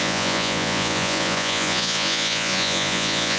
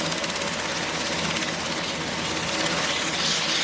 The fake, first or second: first